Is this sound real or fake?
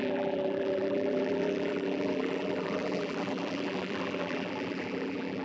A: fake